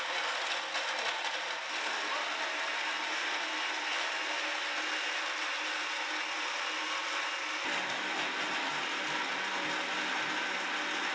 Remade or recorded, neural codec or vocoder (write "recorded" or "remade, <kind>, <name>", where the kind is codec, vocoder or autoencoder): recorded